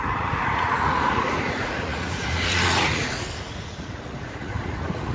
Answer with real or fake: fake